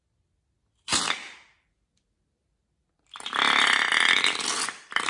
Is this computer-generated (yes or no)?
no